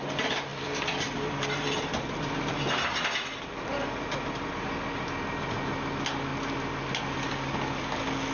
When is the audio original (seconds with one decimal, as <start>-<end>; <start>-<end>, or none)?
0.0-0.5; 4.5-8.3